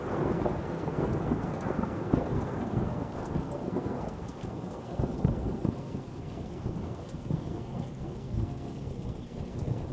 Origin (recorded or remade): remade